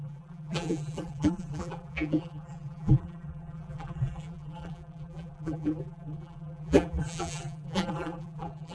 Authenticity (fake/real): fake